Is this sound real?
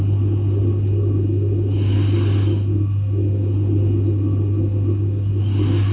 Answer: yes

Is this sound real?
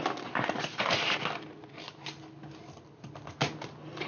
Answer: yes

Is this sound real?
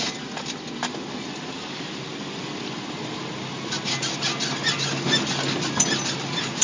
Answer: yes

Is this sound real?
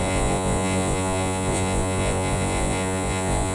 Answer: no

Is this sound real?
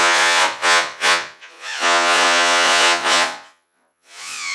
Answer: no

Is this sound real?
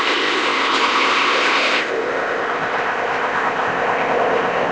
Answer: no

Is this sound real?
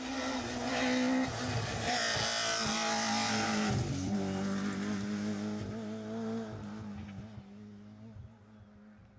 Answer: yes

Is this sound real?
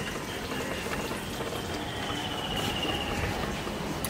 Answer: yes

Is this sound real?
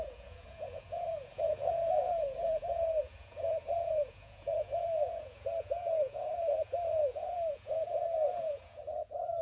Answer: no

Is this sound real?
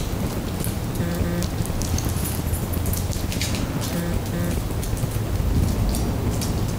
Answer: yes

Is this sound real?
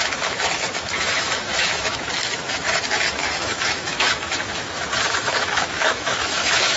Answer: no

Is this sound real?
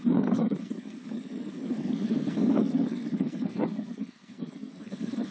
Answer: no